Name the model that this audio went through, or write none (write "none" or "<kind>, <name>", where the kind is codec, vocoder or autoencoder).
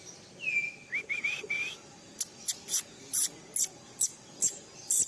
none